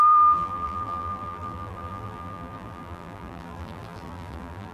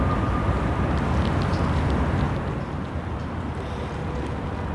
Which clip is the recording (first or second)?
second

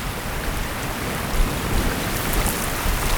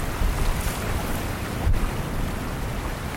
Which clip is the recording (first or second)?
first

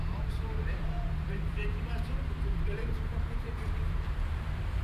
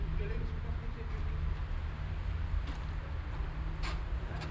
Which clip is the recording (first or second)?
second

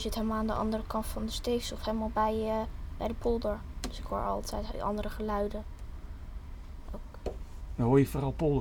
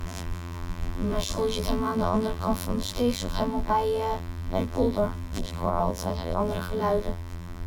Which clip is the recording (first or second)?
first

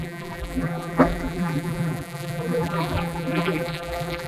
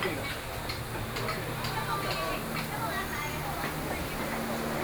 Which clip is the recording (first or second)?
second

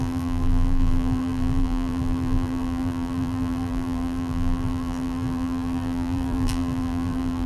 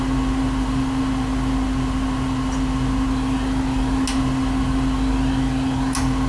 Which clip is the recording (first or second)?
second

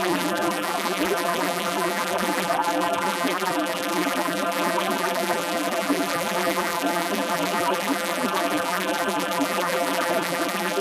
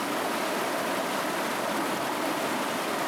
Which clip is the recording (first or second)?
second